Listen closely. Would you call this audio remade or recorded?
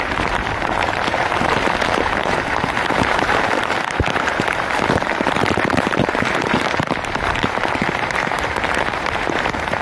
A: remade